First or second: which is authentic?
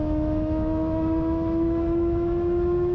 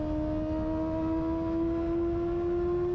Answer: second